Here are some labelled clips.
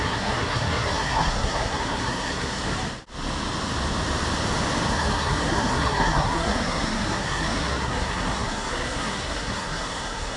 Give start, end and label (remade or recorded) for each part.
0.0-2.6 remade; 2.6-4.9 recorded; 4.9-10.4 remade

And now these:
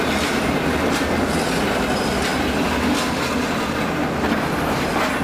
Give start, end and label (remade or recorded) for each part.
0.0-5.2 recorded

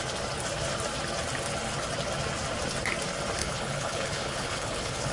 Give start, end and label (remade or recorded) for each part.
0.0-3.4 recorded; 3.4-5.1 remade

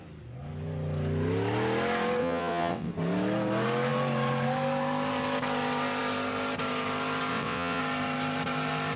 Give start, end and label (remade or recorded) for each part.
0.0-2.2 recorded; 2.2-2.9 remade; 2.9-7.3 recorded; 7.3-7.8 remade; 7.8-9.0 recorded

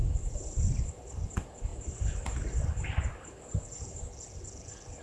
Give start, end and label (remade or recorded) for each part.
0.0-0.9 remade; 0.9-5.0 recorded

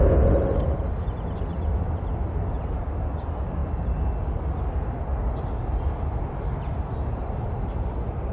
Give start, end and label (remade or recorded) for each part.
0.0-8.3 recorded